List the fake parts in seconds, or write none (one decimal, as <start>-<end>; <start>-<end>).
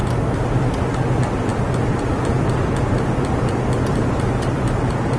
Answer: none